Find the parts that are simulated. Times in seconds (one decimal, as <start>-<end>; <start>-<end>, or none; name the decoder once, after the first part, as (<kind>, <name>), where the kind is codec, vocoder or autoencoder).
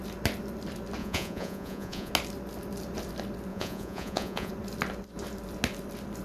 1.0-2.1 (vocoder, Vocos); 3.5-4.5